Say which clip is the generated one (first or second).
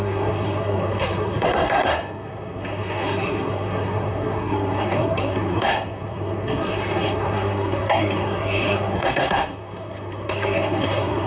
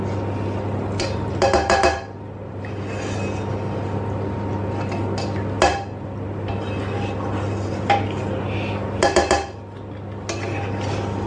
first